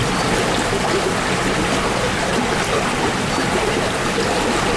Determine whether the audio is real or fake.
real